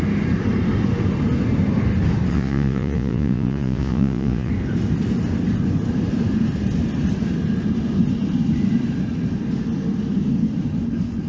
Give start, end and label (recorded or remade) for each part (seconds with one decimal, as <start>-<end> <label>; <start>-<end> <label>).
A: 0.0-2.3 recorded; 2.3-4.5 remade; 4.5-11.3 recorded